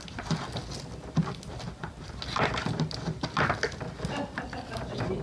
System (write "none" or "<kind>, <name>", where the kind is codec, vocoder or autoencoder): none